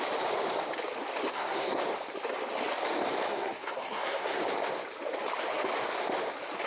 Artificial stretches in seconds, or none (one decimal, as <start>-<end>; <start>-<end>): 1.3-1.8; 3.3-4.4